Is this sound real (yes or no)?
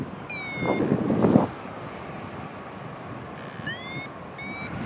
yes